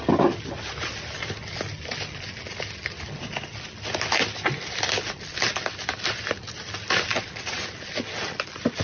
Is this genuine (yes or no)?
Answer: yes